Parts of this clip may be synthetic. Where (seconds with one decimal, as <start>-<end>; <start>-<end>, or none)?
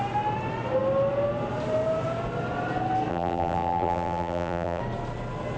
3.1-4.8